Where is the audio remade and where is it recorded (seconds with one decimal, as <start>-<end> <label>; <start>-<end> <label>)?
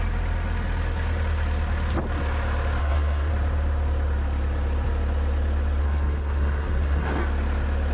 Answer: 0.0-2.8 recorded; 2.8-3.3 remade; 3.3-5.8 recorded; 5.8-7.2 remade; 7.2-7.9 recorded